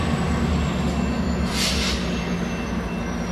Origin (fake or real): real